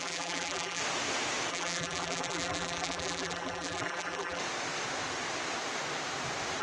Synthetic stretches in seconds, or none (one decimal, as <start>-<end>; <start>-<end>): 0.0-0.8; 1.5-4.4